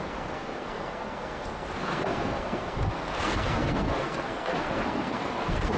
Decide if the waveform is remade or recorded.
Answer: remade